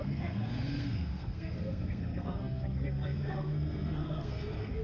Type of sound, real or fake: fake